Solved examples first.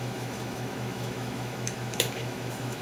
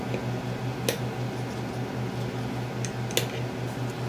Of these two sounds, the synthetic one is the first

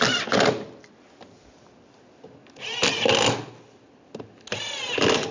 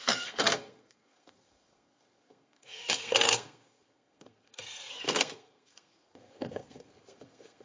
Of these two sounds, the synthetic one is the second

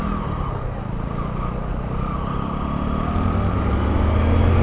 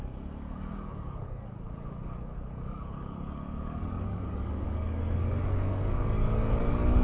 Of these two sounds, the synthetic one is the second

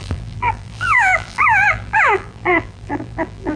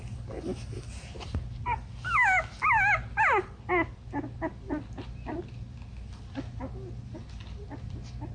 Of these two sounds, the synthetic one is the first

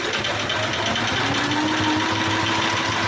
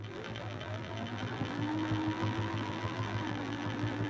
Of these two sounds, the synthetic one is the second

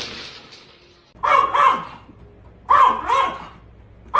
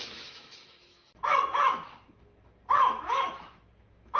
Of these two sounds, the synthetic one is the second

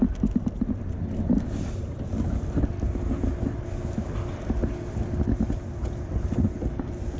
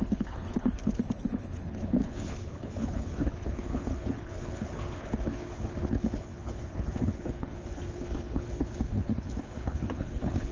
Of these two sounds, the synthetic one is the second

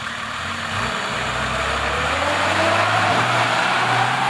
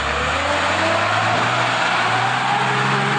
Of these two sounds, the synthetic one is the first